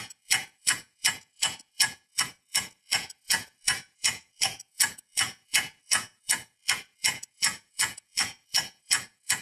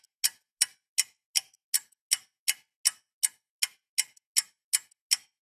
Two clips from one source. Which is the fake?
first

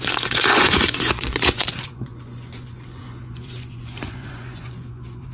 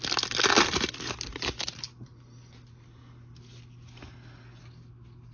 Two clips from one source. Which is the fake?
first